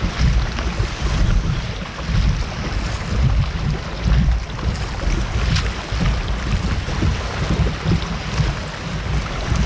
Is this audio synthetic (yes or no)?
no